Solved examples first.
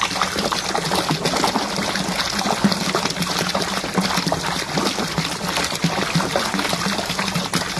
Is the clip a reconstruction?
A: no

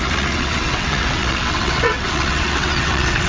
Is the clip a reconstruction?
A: yes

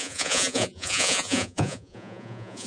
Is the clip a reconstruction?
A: yes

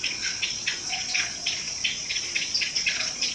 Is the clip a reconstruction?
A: yes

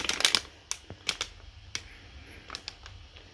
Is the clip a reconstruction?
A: no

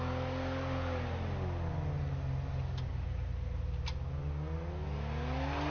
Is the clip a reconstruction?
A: no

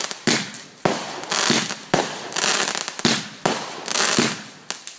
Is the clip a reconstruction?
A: no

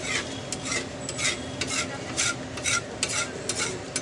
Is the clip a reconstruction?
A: no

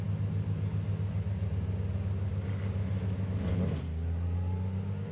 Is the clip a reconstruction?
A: no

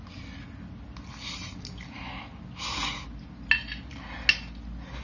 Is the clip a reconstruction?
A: no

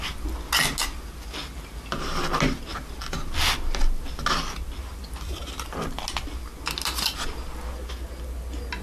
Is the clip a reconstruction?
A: no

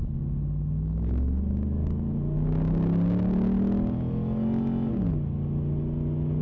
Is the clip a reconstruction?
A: no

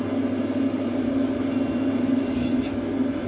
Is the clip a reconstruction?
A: no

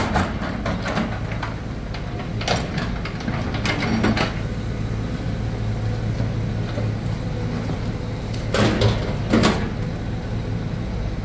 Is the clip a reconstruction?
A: no